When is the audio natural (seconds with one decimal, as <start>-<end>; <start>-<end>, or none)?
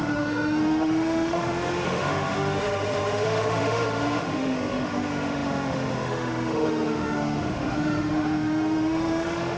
none